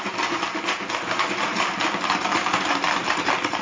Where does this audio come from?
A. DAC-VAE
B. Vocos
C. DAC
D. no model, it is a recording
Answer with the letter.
D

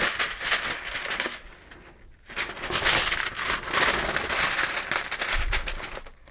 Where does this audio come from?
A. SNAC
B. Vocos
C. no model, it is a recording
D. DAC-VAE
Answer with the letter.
C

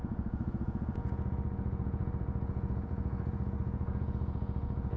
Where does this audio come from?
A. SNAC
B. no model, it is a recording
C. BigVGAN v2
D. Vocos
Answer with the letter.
D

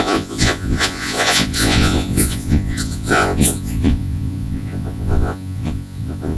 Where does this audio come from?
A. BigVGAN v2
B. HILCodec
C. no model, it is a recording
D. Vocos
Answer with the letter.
D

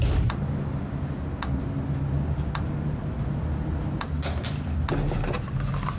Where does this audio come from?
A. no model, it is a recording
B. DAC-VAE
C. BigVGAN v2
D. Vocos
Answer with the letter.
A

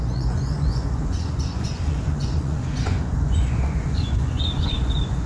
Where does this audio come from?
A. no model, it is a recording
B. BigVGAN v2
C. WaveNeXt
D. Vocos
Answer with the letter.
D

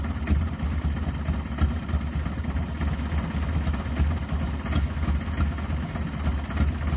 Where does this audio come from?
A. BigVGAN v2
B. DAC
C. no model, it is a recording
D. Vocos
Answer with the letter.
C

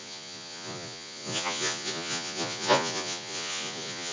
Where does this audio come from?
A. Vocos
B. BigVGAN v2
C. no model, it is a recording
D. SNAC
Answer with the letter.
A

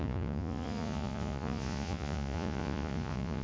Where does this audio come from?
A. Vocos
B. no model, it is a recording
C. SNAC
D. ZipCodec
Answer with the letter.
A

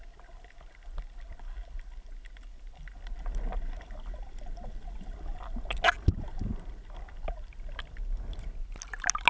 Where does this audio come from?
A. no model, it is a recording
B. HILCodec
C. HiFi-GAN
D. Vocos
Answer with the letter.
A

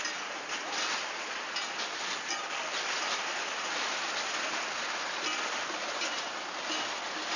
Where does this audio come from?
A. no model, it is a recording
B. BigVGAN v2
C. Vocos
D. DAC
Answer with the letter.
A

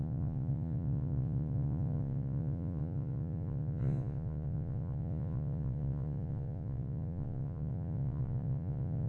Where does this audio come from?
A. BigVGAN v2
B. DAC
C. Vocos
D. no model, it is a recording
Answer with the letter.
C